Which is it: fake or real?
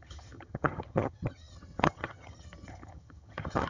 fake